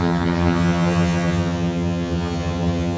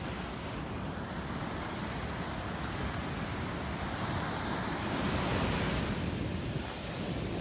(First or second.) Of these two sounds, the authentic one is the second